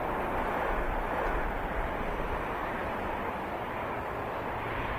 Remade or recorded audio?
recorded